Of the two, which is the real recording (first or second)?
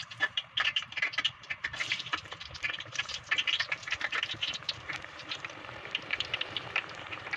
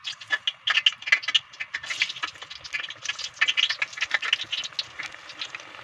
second